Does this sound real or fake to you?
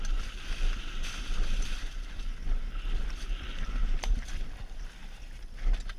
real